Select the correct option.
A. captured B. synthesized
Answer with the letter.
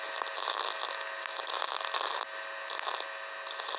A